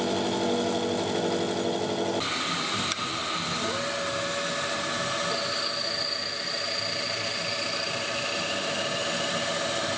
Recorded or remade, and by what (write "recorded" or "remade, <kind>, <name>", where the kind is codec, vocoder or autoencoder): recorded